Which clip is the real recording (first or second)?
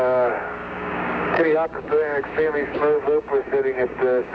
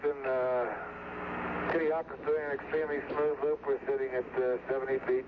second